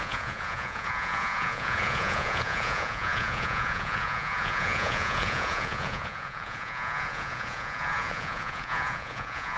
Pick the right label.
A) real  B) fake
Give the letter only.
B